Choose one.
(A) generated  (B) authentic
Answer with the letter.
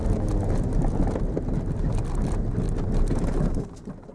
B